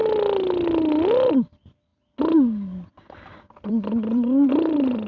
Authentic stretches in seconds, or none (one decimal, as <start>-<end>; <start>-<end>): 0.0-1.3; 1.9-2.9